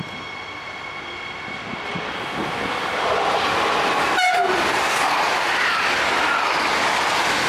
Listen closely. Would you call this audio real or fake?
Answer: real